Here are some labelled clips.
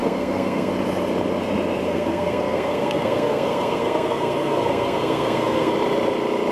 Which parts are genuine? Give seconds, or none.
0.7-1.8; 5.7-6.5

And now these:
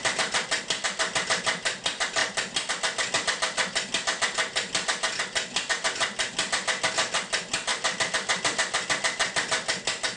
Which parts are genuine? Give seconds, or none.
0.0-10.2

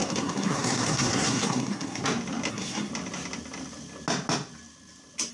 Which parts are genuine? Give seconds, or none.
2.0-2.5; 2.9-5.3

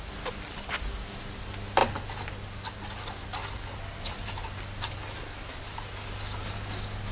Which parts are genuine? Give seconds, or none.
0.0-7.1

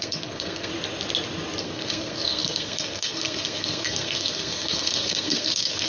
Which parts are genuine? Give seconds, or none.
0.7-1.6

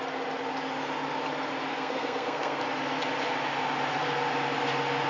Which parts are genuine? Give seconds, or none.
0.0-1.7; 2.6-5.1